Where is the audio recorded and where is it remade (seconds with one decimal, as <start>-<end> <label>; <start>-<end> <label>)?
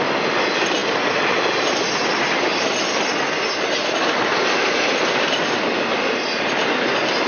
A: 0.0-7.3 recorded